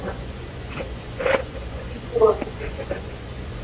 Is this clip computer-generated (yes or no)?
yes